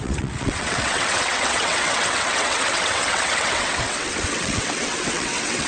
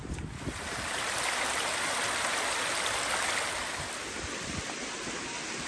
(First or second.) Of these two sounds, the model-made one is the first